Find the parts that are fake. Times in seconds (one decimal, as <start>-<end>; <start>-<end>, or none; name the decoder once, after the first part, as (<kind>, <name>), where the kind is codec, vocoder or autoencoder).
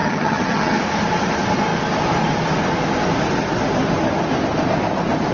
0.0-0.8 (vocoder, HiFi-GAN)